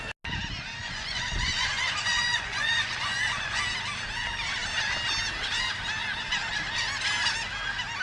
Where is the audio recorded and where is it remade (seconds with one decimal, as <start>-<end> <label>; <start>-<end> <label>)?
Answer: 0.0-0.8 recorded; 0.8-3.6 remade; 3.6-8.0 recorded